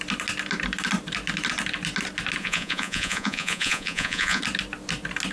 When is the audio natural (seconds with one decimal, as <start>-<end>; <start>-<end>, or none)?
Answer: 0.0-2.4; 4.4-5.3